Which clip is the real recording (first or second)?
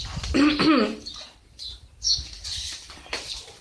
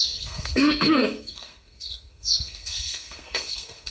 first